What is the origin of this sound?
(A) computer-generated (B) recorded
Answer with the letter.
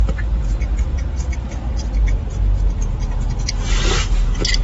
B